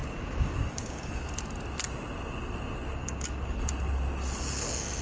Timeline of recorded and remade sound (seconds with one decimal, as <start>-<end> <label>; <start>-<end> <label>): 0.0-1.2 remade; 1.2-5.0 recorded

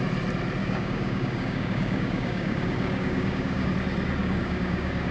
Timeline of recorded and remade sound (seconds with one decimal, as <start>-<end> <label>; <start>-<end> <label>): 0.0-0.6 recorded; 0.6-3.7 remade; 3.7-4.2 recorded; 4.2-5.1 remade

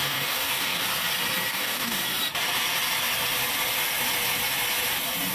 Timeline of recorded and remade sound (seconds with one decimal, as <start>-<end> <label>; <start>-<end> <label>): 0.0-0.9 remade; 0.9-1.5 recorded; 1.5-2.0 remade; 2.0-5.3 recorded

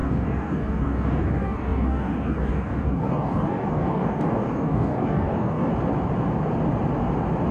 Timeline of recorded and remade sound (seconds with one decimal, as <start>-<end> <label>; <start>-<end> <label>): 0.0-5.7 remade; 5.7-7.5 recorded